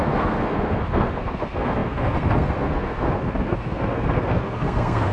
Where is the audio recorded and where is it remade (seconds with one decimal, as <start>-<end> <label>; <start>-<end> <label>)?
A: 0.0-5.1 remade